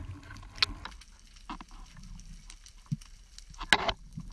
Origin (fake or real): real